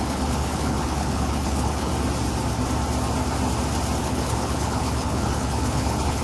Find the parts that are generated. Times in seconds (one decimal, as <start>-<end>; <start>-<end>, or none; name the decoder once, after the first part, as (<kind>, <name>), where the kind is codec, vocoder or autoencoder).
0.0-1.9 (codec, HILCodec); 4.0-6.2